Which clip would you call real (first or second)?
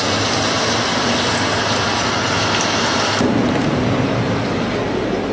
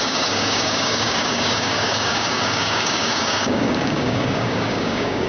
first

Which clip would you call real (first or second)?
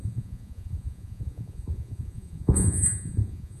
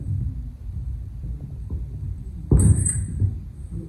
second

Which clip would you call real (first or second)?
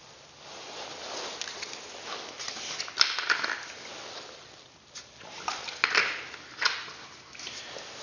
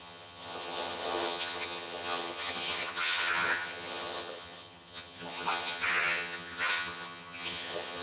first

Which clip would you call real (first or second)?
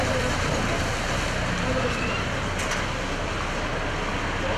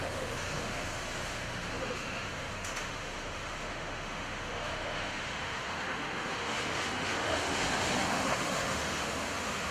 first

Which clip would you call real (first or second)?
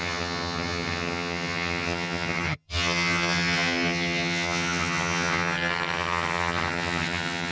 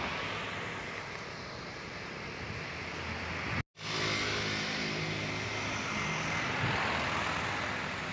second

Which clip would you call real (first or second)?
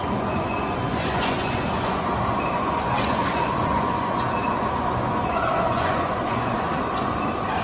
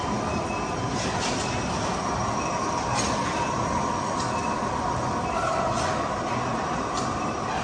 second